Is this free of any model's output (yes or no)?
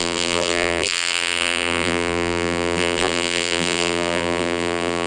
no